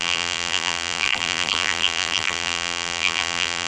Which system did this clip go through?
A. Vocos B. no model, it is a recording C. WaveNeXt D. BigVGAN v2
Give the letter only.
D